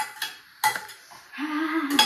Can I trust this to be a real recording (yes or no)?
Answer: yes